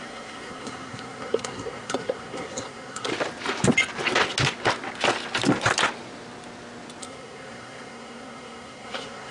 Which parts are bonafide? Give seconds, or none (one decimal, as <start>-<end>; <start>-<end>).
3.1-7.0